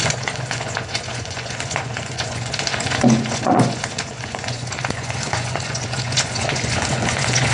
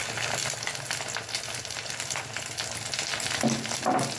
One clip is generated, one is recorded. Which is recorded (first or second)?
second